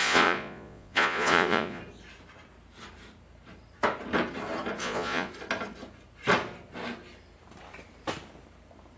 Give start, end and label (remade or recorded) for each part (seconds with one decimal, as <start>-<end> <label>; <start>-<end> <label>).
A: 0.0-1.8 remade; 1.8-4.8 recorded; 4.8-5.3 remade; 5.3-9.0 recorded